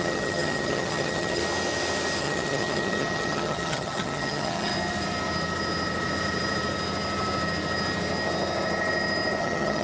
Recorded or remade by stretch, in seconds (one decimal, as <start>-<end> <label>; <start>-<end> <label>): 0.0-1.4 remade; 1.4-2.2 recorded; 2.2-4.7 remade; 4.7-9.4 recorded; 9.4-9.8 remade